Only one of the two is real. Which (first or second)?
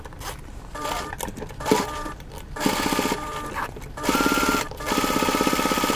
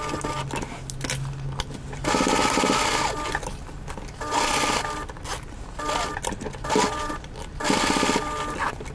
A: second